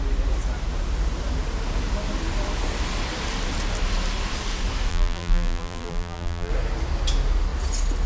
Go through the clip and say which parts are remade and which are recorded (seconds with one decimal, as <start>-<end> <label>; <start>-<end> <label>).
0.0-4.9 recorded; 4.9-6.5 remade; 6.5-8.1 recorded